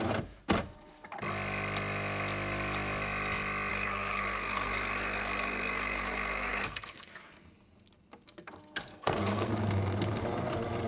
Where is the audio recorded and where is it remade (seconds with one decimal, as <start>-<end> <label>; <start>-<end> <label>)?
0.0-3.7 recorded; 3.7-7.1 remade; 7.1-8.9 recorded; 8.9-9.5 remade; 9.5-10.9 recorded